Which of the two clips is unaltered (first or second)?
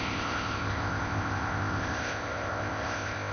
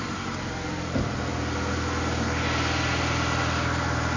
second